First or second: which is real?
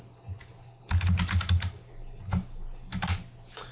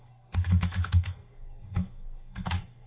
first